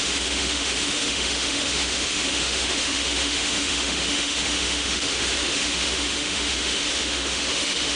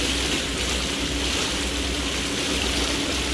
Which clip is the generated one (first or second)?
first